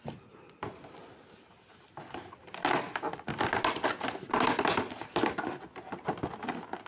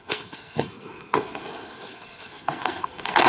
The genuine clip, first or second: first